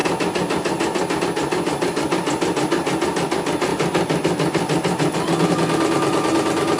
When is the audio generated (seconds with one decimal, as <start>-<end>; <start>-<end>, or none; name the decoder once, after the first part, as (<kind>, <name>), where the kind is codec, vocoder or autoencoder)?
none